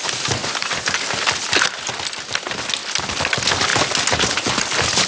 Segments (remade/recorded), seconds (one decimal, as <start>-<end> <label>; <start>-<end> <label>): 0.0-0.4 recorded; 0.4-1.1 remade; 1.1-5.1 recorded